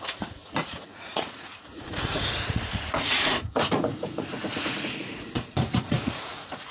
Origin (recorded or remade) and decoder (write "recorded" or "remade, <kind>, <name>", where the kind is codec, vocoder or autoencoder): remade, vocoder, Vocos